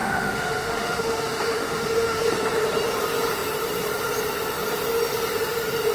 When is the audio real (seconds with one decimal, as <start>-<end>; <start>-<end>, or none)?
2.3-5.9